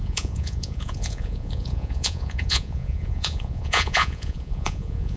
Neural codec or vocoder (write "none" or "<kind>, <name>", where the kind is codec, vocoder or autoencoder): vocoder, Vocos